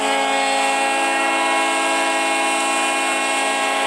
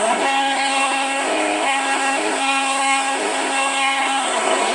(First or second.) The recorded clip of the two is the first